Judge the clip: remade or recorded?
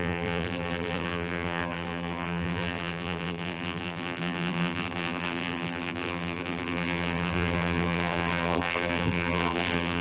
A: remade